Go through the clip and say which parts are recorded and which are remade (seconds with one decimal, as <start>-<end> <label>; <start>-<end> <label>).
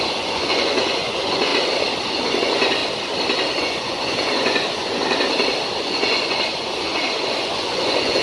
0.0-1.5 remade; 1.5-2.1 recorded; 2.1-2.8 remade; 2.8-3.6 recorded; 3.6-5.0 remade; 5.0-5.8 recorded; 5.8-8.2 remade